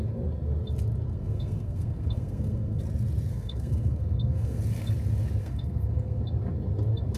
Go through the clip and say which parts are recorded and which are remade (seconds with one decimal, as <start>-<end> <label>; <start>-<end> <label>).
0.0-1.1 recorded; 1.1-2.8 remade; 2.8-3.3 recorded; 3.3-4.6 remade; 4.6-5.4 recorded; 5.4-6.2 remade; 6.2-7.2 recorded